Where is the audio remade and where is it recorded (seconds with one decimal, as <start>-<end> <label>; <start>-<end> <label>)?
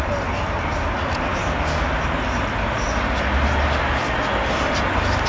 0.0-5.3 recorded